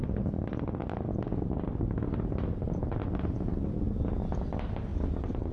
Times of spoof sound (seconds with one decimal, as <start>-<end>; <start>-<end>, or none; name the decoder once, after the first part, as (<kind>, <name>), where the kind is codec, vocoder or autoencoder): none